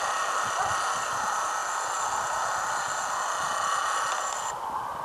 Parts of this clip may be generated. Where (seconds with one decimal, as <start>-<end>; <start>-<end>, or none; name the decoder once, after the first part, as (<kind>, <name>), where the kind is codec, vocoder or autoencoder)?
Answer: none